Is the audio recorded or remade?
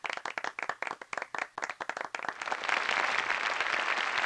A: recorded